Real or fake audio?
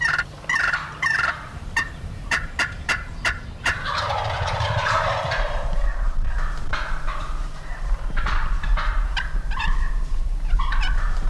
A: fake